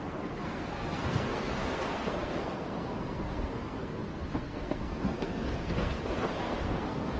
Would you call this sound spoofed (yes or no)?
yes